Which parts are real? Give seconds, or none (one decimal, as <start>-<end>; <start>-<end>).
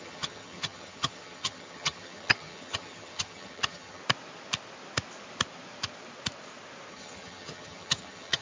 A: 4.0-6.9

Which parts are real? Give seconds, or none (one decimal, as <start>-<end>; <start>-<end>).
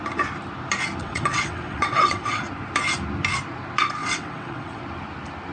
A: 0.0-1.0; 2.4-4.0; 4.8-5.5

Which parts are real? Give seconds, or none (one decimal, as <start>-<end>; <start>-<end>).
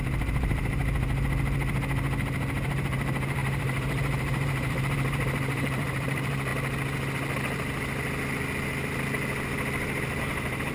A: 0.8-2.7; 6.5-10.2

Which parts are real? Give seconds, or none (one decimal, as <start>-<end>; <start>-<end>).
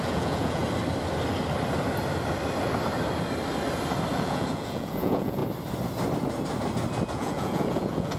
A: 0.6-4.1; 5.4-7.1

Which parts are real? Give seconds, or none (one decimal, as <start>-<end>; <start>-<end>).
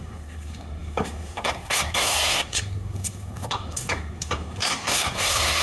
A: none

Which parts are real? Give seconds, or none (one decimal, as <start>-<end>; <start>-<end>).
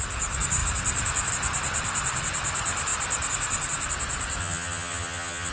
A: 0.0-4.4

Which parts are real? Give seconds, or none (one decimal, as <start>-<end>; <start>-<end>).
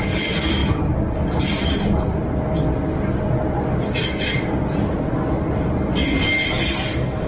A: 0.0-7.3